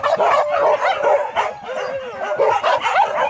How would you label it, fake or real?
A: real